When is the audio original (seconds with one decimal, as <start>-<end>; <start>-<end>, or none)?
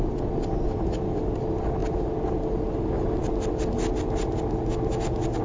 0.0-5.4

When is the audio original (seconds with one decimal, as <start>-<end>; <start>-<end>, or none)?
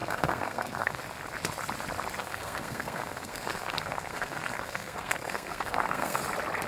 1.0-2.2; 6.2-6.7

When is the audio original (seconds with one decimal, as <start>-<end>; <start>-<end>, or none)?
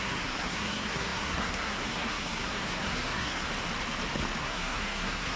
3.5-4.4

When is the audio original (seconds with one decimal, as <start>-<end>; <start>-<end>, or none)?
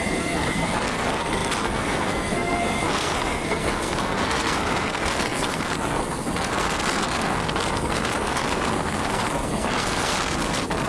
none